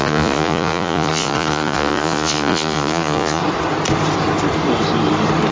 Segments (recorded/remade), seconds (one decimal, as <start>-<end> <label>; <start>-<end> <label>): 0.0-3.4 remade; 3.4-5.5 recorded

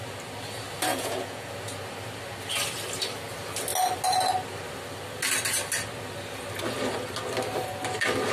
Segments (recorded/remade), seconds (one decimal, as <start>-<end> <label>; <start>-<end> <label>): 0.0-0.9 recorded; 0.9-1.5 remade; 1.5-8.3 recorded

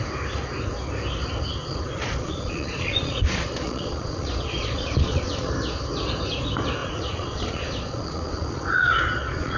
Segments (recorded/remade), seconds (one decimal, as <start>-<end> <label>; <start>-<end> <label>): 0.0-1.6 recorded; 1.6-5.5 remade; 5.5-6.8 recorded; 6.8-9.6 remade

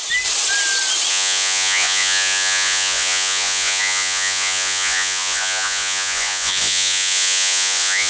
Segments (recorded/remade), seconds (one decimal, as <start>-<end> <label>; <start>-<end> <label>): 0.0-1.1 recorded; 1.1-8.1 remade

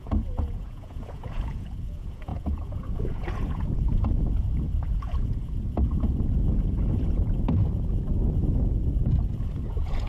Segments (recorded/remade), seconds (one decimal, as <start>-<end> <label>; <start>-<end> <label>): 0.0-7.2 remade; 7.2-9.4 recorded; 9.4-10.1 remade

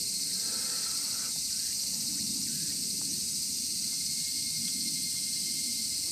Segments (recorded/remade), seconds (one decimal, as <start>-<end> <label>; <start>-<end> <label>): 0.0-6.1 recorded